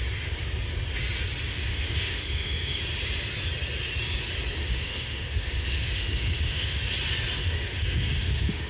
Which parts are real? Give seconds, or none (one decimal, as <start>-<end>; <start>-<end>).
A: 0.0-1.5; 2.8-4.6; 6.8-7.4